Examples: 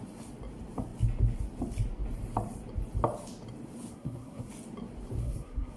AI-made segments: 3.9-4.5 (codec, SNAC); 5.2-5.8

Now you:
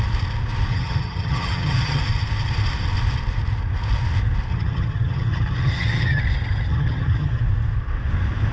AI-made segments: 0.7-2.0 (vocoder, HiFi-GAN); 4.5-6.2; 6.7-7.4

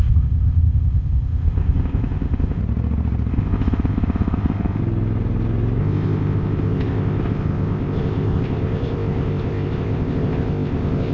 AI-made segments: 0.0-2.6 (codec, ZipCodec); 3.3-4.8; 5.8-11.1

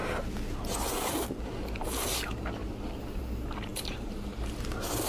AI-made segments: 2.6-3.2 (vocoder, BigVGAN v2); 3.7-4.3

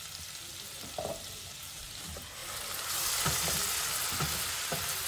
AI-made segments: none